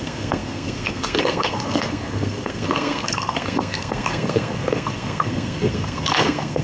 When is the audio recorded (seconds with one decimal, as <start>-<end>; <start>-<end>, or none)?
none